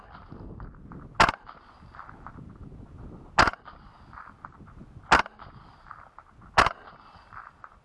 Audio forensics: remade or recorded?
recorded